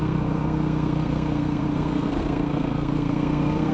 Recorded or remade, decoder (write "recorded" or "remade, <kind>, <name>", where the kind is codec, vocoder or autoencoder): remade, codec, SNAC